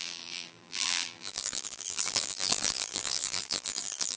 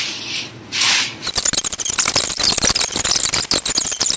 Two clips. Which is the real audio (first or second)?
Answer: second